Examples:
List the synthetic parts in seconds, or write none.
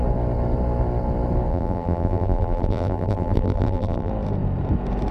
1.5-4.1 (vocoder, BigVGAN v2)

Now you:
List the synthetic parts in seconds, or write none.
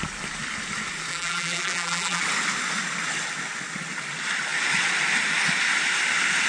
1.1-2.2 (vocoder, BigVGAN v2)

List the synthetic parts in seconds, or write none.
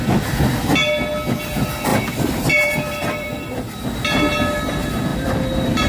1.9-3.5 (vocoder, BigVGAN v2); 5.1-5.9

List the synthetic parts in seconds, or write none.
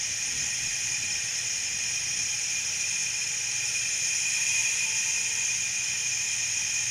0.7-1.8 (vocoder, BigVGAN v2)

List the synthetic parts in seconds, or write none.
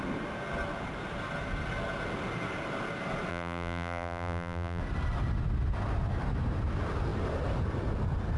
3.3-4.8 (vocoder, BigVGAN v2)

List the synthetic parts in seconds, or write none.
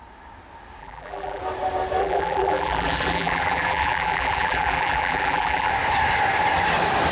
0.8-1.4 (vocoder, BigVGAN v2); 2.0-5.7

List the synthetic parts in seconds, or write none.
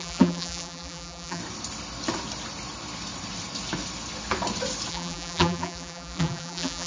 0.0-1.4 (vocoder, BigVGAN v2); 4.9-6.9